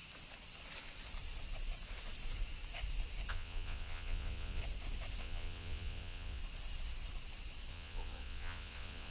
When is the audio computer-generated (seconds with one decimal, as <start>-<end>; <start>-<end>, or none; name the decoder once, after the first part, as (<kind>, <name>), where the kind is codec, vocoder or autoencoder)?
3.3-4.6 (vocoder, WaveNeXt); 5.2-6.4; 7.7-9.1